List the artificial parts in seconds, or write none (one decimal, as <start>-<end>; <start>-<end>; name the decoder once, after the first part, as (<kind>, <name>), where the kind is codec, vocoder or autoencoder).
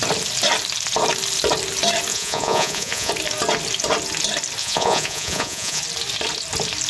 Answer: 2.1-3.1 (vocoder, Vocos); 4.6-5.8